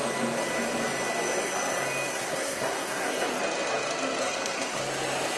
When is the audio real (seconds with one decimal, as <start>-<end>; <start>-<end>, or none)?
0.0-2.1; 3.3-4.2; 4.8-5.4